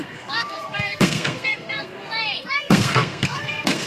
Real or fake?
fake